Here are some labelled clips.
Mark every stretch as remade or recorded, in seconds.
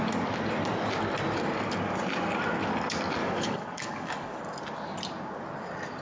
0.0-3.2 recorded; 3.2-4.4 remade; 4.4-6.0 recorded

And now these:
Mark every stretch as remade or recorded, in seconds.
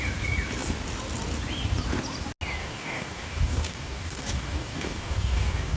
0.0-2.6 recorded; 2.6-5.8 remade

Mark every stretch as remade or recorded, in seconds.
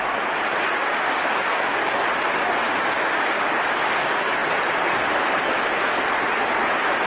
0.0-0.8 recorded; 0.8-2.0 remade; 2.0-2.6 recorded; 2.6-3.5 remade; 3.5-7.1 recorded